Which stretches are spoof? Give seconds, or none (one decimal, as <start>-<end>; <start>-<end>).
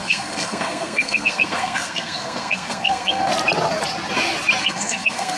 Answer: 0.0-3.3; 4.6-5.4